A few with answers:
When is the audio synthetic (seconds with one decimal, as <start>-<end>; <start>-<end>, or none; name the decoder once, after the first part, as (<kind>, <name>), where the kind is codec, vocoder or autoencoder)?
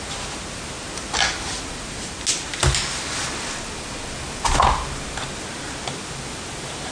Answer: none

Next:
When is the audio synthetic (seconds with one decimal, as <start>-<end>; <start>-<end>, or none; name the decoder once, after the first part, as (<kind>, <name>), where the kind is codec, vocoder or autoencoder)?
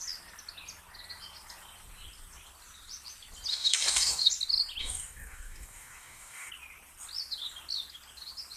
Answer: 3.5-4.3 (codec, DAC); 4.8-6.5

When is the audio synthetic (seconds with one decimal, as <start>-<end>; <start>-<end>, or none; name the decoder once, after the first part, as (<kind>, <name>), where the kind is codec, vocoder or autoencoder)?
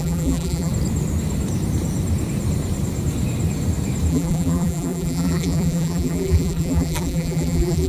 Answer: 0.0-0.7 (vocoder, BigVGAN v2); 4.1-7.9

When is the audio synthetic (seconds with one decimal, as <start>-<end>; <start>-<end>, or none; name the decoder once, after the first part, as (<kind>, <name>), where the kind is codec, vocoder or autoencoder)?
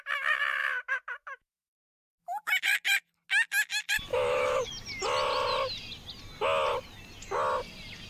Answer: 0.6-2.6 (autoencoder, DAC-VAE); 4.1-4.7